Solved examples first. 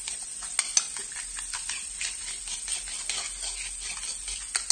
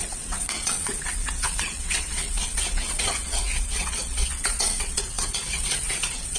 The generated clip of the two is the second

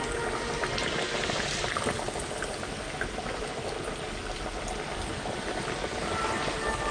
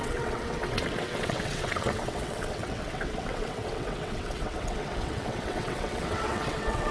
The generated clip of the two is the second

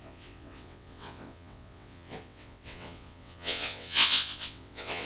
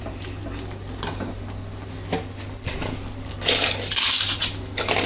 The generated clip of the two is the first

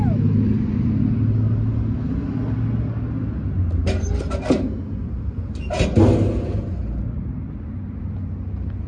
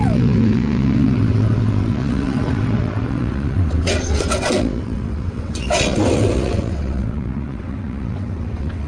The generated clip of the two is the second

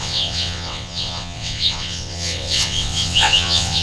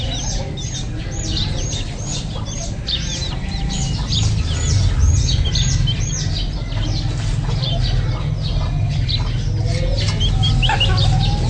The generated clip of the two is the first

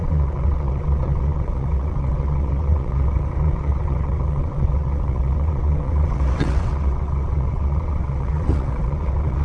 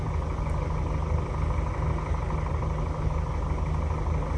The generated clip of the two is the first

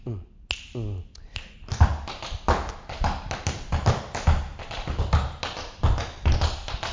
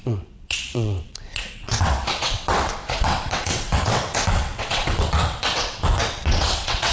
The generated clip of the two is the second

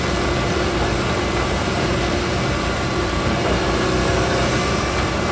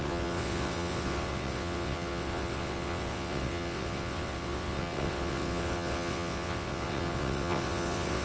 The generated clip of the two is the second